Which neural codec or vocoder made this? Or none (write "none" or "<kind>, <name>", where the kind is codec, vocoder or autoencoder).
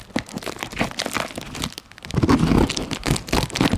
none